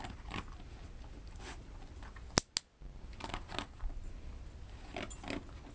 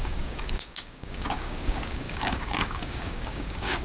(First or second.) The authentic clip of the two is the first